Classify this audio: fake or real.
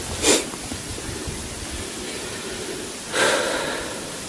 real